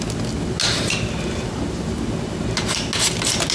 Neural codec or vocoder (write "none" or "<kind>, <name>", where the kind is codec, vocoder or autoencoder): none